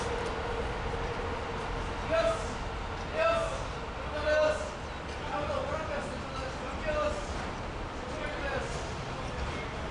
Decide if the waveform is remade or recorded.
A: recorded